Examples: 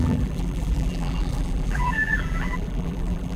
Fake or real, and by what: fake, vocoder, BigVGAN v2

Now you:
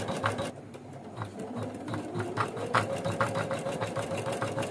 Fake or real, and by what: real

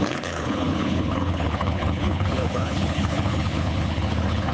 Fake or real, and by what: fake, codec, HILCodec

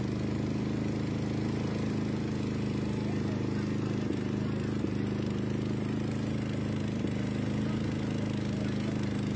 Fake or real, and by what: real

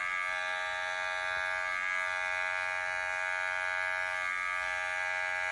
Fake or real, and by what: real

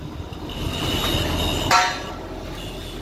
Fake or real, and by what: real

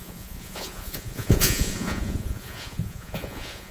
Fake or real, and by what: fake, vocoder, Vocos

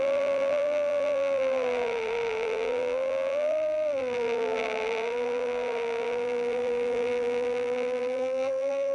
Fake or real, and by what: fake, vocoder, BigVGAN v2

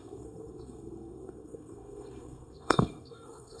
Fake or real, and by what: fake, codec, SNAC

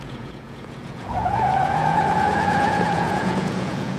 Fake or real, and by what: fake, vocoder, Vocos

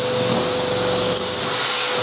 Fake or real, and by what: real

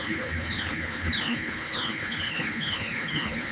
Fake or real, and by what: fake, codec, HILCodec